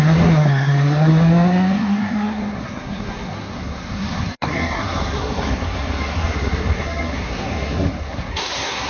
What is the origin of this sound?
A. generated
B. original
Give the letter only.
A